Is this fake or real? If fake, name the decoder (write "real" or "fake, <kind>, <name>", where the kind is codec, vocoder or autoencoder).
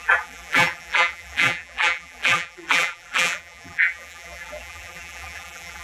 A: fake, vocoder, BigVGAN v2